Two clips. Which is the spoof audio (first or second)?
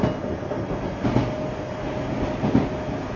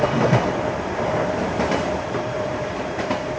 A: second